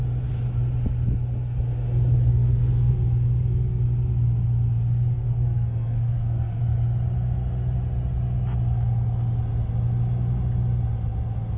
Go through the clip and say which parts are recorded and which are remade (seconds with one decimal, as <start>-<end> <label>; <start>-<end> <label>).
0.0-2.3 recorded; 2.3-2.9 remade; 2.9-5.2 recorded; 5.2-6.6 remade; 6.6-11.6 recorded

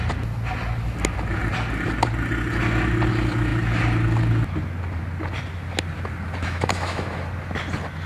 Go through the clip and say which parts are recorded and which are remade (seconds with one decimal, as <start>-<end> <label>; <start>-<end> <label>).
0.0-6.4 recorded; 6.4-7.2 remade; 7.2-8.1 recorded